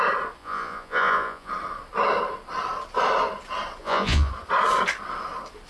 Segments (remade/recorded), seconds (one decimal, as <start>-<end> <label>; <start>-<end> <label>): 0.0-0.4 recorded; 0.4-1.5 remade; 1.5-3.8 recorded; 3.8-4.3 remade; 4.3-5.7 recorded

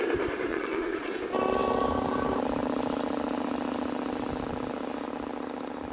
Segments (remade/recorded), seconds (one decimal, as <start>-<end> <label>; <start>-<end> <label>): 0.0-0.5 recorded; 0.5-1.1 remade; 1.1-5.9 recorded